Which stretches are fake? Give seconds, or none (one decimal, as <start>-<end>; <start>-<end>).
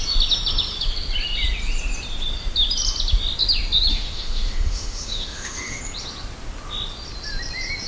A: 3.9-5.8